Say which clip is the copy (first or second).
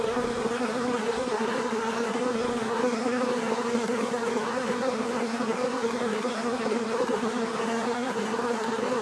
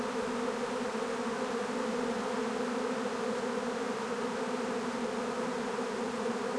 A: first